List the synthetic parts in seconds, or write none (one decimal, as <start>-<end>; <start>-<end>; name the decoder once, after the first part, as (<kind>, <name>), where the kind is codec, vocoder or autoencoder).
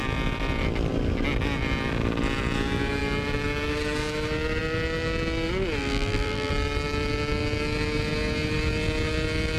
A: 5.8-6.5 (vocoder, BigVGAN v2)